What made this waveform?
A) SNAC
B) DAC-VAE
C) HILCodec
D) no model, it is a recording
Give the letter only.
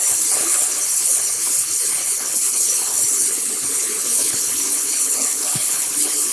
C